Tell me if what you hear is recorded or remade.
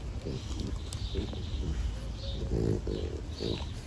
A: recorded